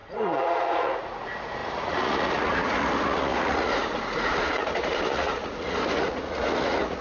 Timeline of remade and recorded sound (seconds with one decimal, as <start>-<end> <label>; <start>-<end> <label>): 0.0-7.0 remade